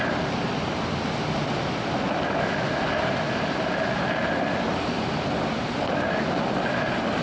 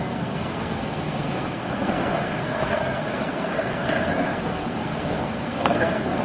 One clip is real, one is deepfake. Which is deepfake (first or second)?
second